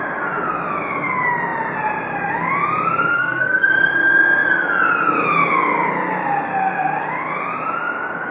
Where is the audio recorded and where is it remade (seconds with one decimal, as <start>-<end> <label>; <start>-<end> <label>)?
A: 0.0-3.1 recorded; 3.1-3.7 remade; 3.7-8.3 recorded